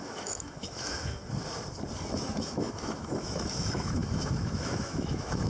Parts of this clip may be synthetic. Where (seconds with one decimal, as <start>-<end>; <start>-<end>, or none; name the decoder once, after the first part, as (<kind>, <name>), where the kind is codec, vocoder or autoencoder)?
0.0-1.2 (autoencoder, DAC-VAE); 2.1-5.5